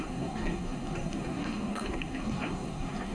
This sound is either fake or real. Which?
fake